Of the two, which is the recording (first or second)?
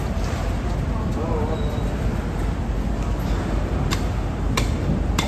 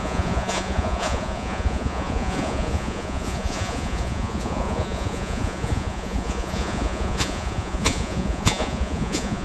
first